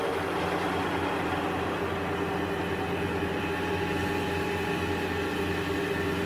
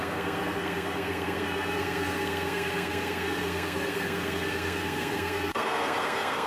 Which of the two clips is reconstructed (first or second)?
second